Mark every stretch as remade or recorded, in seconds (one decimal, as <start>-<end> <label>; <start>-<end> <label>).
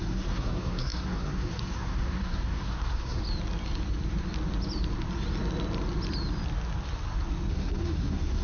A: 0.0-3.2 remade; 3.2-7.5 recorded; 7.5-8.4 remade